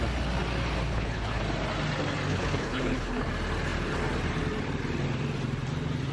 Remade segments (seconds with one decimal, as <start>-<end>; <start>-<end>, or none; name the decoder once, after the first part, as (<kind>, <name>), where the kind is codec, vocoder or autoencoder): 0.9-1.4 (codec, HILCodec); 2.3-3.3